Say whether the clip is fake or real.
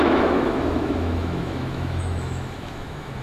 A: fake